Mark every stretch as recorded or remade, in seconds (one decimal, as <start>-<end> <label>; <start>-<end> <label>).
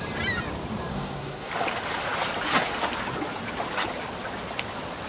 0.0-0.9 recorded; 0.9-1.5 remade; 1.5-5.1 recorded